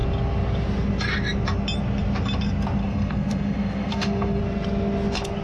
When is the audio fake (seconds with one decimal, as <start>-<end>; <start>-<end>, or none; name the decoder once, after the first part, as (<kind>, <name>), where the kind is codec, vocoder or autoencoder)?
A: 2.8-4.4 (codec, SNAC)